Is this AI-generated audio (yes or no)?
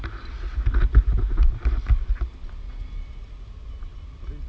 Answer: no